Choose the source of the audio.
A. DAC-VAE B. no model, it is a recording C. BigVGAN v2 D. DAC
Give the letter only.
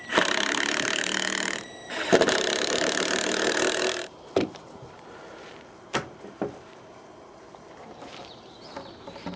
C